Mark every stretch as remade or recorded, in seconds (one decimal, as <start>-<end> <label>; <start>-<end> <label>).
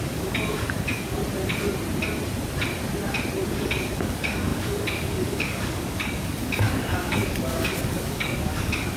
0.0-1.2 remade; 1.2-3.5 recorded; 3.5-9.0 remade